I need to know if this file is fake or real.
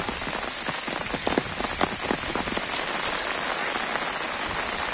real